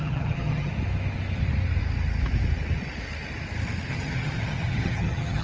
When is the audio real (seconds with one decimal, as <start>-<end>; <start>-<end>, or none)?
0.7-3.9